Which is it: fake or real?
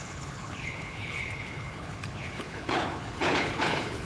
fake